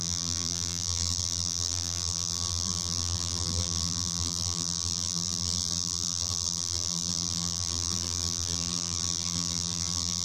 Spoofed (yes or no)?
yes